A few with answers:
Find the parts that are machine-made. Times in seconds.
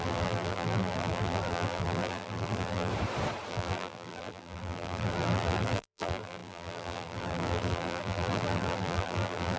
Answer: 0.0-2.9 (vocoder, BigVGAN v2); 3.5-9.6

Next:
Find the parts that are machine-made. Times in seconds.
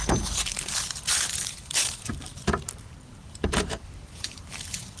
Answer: 0.0-2.4 (vocoder, BigVGAN v2); 3.0-5.0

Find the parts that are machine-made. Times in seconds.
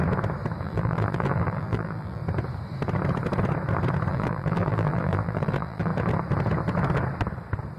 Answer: 0.6-2.2 (vocoder, BigVGAN v2); 4.1-5.9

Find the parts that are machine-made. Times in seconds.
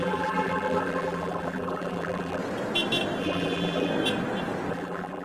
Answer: 0.0-2.4 (vocoder, BigVGAN v2); 3.2-3.9; 4.7-5.2